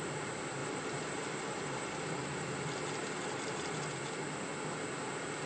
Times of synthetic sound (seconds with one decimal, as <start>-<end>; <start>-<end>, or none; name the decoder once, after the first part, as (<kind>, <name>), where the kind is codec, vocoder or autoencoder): 0.6-3.9 (vocoder, BigVGAN v2)